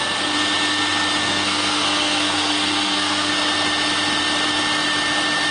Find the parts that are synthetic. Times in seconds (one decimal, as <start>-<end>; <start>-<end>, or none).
1.2-3.3